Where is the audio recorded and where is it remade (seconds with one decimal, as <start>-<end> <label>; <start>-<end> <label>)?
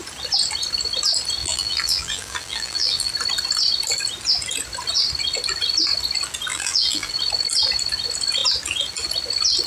0.0-1.4 recorded; 1.4-3.1 remade; 3.1-6.5 recorded; 6.5-7.1 remade; 7.1-9.7 recorded